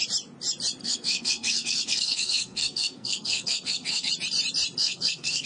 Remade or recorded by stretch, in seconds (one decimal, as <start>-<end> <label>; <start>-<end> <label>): 0.0-0.8 recorded; 0.8-4.1 remade; 4.1-4.8 recorded; 4.8-5.5 remade